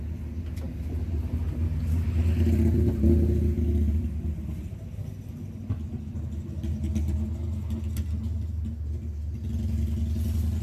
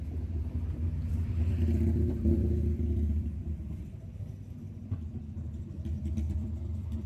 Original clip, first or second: first